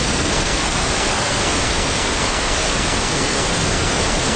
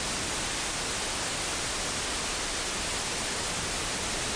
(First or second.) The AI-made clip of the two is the first